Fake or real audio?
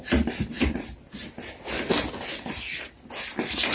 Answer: real